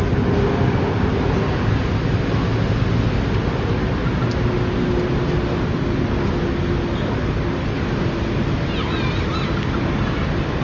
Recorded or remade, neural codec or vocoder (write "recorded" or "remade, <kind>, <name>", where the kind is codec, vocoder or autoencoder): recorded